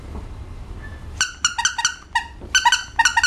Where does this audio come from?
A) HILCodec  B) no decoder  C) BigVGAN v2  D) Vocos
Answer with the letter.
B